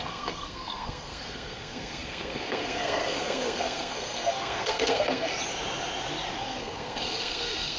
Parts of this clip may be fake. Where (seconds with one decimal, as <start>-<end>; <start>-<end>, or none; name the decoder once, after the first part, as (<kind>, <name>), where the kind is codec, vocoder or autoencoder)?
0.0-5.3 (codec, SNAC); 6.4-7.8